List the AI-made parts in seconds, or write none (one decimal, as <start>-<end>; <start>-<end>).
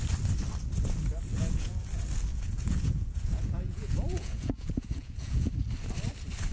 1.3-1.8; 2.3-5.5